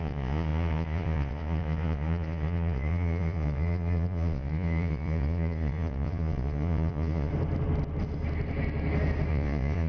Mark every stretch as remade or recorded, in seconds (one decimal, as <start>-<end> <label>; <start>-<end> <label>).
0.0-7.3 remade; 7.3-9.3 recorded; 9.3-9.9 remade